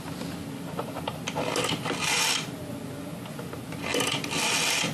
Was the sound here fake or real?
real